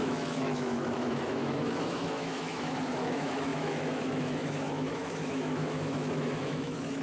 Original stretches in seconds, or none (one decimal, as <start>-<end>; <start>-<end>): none

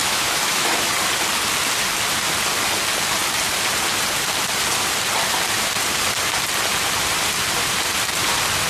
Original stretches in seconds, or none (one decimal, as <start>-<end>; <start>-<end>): 0.9-8.7

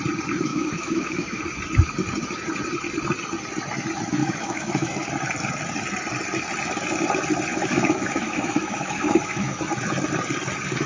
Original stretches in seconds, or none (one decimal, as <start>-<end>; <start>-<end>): 0.0-0.5; 1.4-4.2; 5.1-7.5; 9.6-10.9

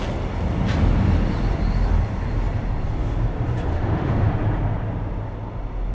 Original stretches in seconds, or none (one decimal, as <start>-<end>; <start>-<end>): 0.0-3.7; 4.3-5.9

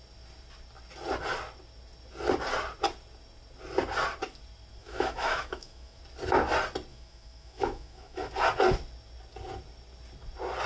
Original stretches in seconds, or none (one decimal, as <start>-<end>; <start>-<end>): 0.0-4.8; 6.0-6.9; 8.3-10.7